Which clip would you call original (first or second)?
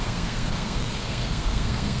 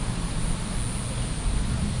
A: second